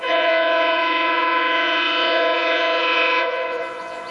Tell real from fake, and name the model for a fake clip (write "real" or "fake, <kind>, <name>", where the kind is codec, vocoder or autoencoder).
fake, vocoder, Vocos